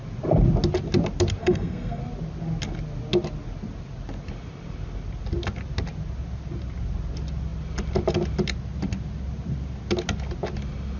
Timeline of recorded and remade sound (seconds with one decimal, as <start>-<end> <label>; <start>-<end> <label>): 0.0-1.4 recorded; 1.4-2.0 remade; 2.0-11.0 recorded